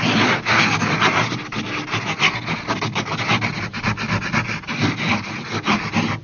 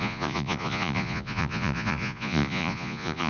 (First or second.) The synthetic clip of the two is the second